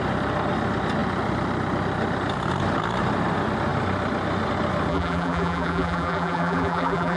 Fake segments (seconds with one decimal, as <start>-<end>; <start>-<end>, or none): 4.9-7.2